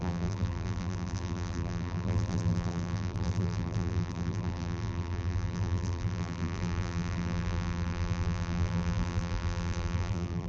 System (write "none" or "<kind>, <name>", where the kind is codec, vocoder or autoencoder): vocoder, BigVGAN v2